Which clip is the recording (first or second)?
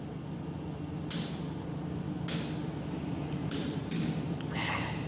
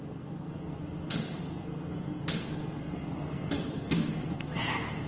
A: first